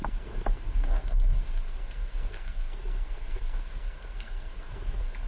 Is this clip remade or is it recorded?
remade